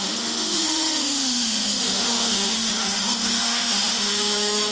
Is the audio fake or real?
fake